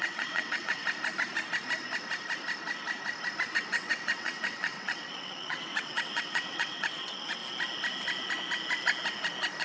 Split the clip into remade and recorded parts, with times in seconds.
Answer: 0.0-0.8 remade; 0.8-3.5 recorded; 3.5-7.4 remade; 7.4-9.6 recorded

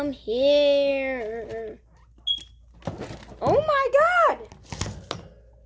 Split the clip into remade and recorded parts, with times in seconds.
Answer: 0.0-5.7 recorded

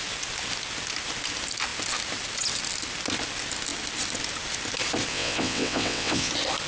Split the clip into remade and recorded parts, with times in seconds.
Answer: 0.0-5.1 recorded; 5.1-6.3 remade; 6.3-6.7 recorded

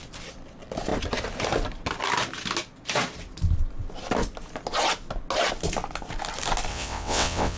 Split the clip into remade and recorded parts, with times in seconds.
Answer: 0.0-6.7 recorded; 6.7-7.6 remade

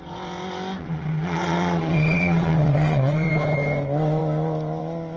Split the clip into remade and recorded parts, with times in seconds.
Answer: 0.0-0.8 recorded; 0.8-3.3 remade; 3.3-5.2 recorded